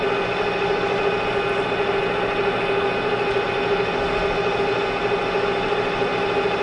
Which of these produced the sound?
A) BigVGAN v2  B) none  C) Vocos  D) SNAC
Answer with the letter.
B